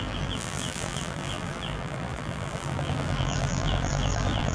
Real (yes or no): no